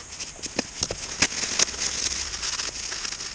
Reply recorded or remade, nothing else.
recorded